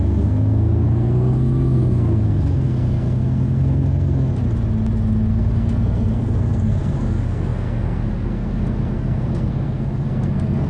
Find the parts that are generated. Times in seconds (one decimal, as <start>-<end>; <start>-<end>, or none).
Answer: 0.0-4.3; 5.3-10.7